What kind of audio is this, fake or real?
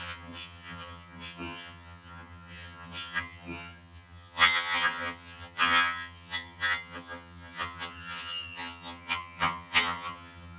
fake